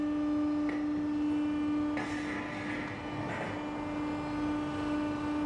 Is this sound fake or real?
real